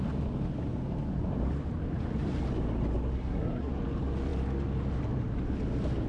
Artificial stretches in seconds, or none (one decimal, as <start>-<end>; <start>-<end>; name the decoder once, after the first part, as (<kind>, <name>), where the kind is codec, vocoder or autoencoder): 3.2-3.7 (codec, SNAC)